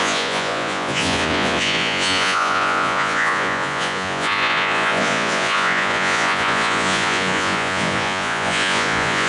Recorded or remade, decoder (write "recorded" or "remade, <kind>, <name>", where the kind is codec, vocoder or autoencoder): remade, vocoder, Vocos